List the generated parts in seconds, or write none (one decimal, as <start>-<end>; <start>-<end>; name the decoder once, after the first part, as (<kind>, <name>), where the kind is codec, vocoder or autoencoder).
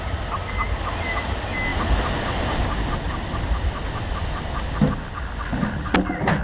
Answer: 1.7-4.8 (vocoder, BigVGAN v2)